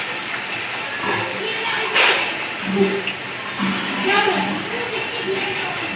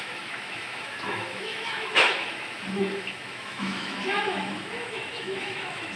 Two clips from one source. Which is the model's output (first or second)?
second